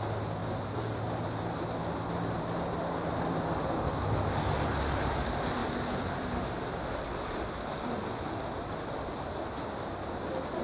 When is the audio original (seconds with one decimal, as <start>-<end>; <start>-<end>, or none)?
0.0-0.4; 1.6-10.6